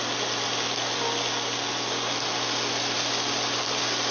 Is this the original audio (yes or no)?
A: yes